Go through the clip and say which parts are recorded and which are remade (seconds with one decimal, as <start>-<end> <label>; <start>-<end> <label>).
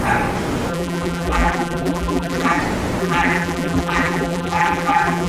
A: 0.0-0.7 recorded; 0.7-2.6 remade; 2.6-3.0 recorded; 3.0-5.3 remade